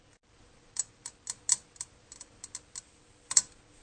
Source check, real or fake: real